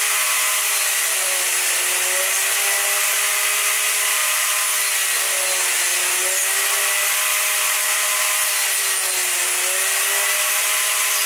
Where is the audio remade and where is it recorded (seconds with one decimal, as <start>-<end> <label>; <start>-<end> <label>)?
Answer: 0.0-11.3 recorded